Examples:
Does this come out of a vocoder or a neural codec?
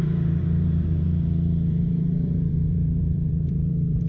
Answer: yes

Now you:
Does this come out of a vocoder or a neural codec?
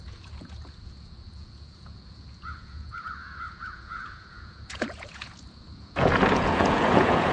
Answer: yes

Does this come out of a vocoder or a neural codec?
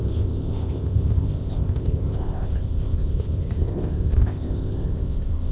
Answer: yes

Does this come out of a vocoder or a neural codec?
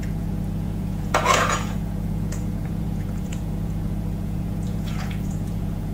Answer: yes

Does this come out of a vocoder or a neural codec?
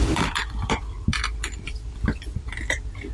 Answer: yes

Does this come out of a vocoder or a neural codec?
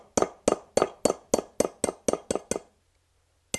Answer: no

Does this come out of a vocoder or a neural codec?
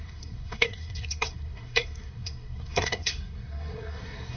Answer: yes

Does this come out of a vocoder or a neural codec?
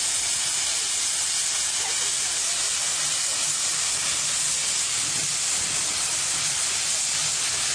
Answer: no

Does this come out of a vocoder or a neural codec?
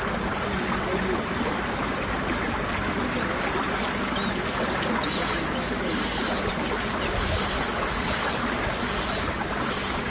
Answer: no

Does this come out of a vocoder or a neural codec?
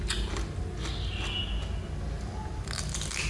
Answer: no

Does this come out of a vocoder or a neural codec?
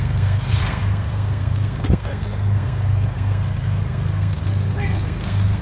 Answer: yes